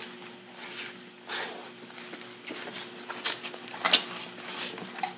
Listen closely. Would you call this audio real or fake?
real